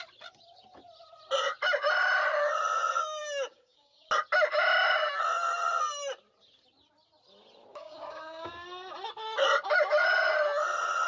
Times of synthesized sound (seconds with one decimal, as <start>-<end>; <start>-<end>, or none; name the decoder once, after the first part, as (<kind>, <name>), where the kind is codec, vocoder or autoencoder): 3.2-4.1 (codec, DAC); 7.7-8.5